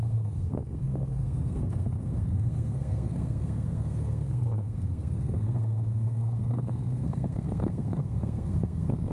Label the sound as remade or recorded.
remade